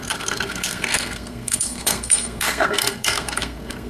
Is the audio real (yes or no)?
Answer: no